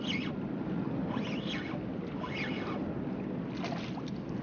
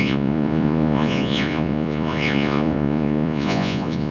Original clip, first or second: first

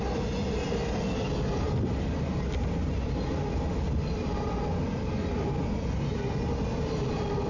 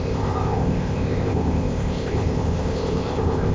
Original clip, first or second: first